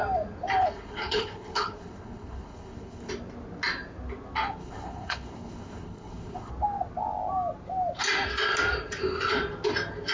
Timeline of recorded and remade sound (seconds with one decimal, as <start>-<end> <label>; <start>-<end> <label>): 0.0-0.6 recorded; 0.6-3.1 remade; 3.1-4.6 recorded; 4.6-6.5 remade; 6.5-10.1 recorded